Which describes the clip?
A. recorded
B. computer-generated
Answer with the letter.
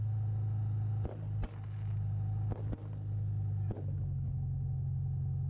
A